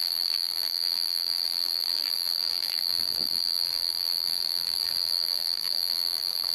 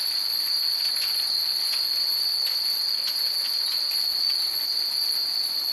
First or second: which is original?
second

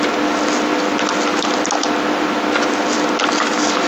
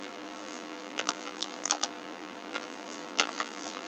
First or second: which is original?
first